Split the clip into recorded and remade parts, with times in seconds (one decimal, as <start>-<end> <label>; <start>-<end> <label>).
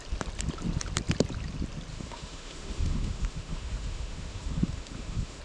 0.0-1.9 recorded; 1.9-5.4 remade